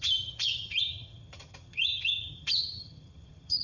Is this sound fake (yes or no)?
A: yes